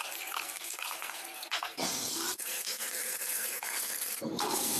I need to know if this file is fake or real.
fake